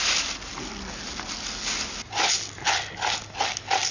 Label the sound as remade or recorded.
recorded